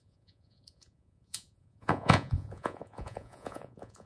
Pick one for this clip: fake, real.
fake